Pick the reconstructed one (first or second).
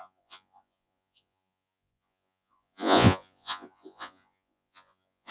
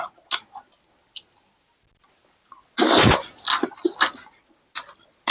first